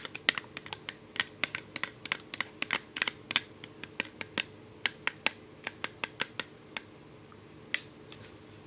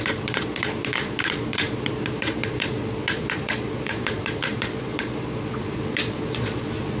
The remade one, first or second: second